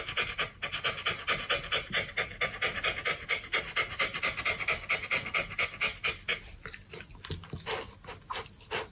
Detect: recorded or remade recorded